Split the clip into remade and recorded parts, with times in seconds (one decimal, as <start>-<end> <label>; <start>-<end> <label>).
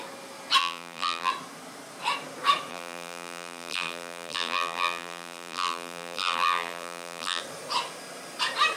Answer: 0.0-0.6 recorded; 0.6-1.3 remade; 1.3-2.7 recorded; 2.7-7.4 remade; 7.4-8.8 recorded